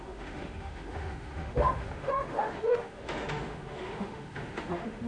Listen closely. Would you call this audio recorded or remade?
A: remade